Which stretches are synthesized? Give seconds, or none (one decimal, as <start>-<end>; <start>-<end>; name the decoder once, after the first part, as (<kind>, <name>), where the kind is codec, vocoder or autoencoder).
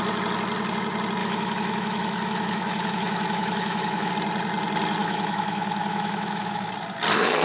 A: 1.2-4.1 (autoencoder, DAC-VAE); 5.0-6.7